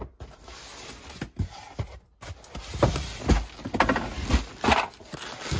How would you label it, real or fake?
real